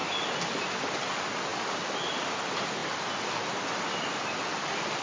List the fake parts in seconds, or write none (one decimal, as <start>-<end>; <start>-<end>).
none